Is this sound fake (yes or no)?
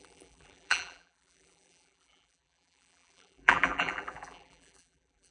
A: yes